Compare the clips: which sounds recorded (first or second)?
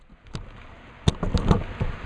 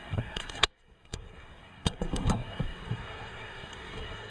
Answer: first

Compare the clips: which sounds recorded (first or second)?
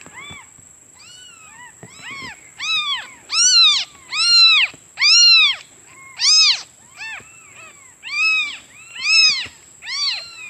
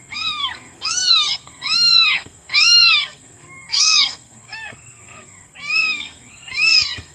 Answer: first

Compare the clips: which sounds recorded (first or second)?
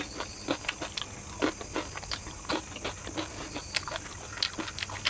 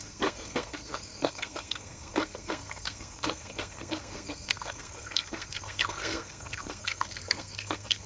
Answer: first